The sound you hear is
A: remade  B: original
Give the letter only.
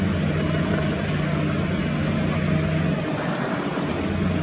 B